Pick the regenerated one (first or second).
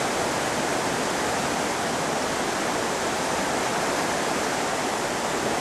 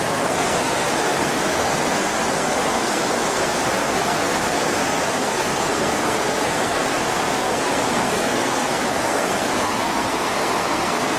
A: second